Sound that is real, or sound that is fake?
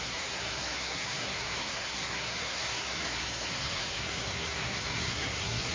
fake